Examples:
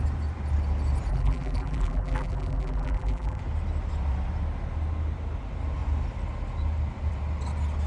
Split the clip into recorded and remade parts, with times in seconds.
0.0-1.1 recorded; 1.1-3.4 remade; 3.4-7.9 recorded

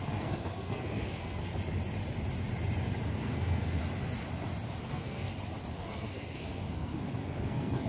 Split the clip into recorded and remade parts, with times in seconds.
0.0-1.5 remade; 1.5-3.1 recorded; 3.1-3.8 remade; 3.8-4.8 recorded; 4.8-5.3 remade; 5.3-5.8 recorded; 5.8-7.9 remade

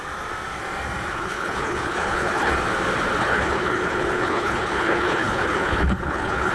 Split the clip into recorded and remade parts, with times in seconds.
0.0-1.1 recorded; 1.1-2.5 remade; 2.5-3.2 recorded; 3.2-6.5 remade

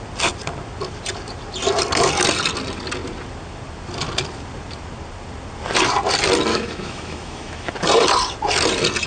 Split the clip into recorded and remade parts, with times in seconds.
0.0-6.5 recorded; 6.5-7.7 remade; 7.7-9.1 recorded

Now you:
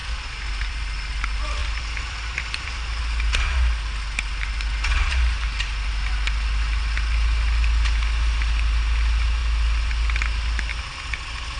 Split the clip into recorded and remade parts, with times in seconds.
0.0-0.8 remade; 0.8-1.6 recorded; 1.6-3.0 remade; 3.0-11.6 recorded